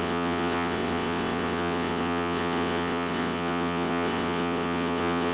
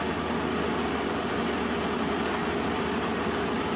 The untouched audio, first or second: second